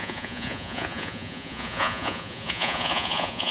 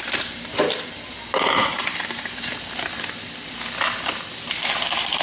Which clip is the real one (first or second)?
second